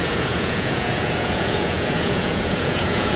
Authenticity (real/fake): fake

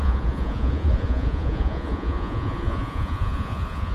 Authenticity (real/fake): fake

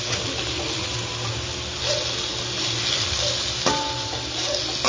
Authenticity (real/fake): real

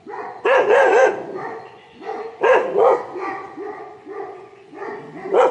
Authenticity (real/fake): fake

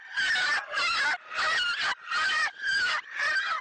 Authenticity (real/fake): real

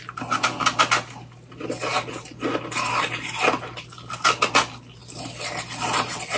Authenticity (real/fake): real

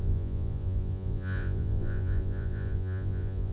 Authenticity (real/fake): fake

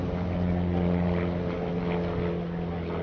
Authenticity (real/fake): real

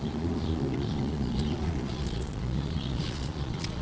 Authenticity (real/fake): fake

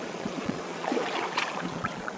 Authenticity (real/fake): fake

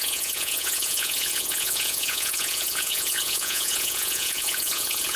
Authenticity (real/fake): fake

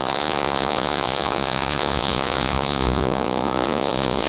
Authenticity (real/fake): fake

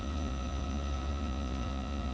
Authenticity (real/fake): fake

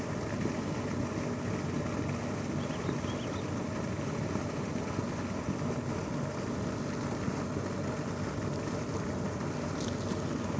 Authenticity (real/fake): real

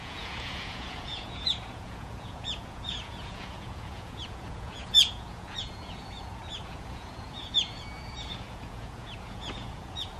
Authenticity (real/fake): fake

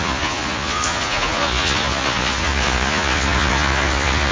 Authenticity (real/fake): fake